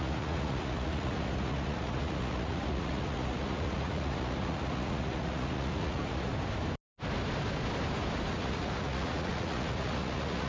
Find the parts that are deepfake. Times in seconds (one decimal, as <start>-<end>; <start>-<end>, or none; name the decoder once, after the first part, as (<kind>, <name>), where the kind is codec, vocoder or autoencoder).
0.0-6.3 (vocoder, Vocos); 8.3-10.5